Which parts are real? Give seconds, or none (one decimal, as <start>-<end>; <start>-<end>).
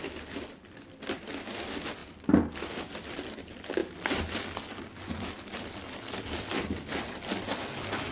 0.0-2.0; 2.7-8.1